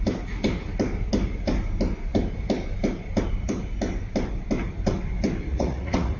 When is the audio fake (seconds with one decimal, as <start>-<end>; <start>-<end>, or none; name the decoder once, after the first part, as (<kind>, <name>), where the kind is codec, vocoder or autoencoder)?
5.5-6.2 (vocoder, Vocos)